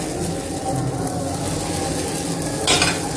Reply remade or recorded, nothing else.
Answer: recorded